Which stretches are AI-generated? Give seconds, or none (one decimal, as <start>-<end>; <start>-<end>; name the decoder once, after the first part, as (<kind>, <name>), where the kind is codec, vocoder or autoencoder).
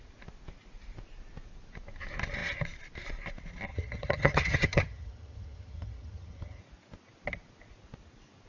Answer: 3.7-6.6 (vocoder, HiFi-GAN)